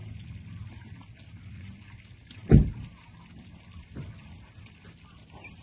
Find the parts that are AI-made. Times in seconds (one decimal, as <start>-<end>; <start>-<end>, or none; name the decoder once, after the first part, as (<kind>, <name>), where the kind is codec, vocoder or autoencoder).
0.0-5.6 (vocoder, BigVGAN v2)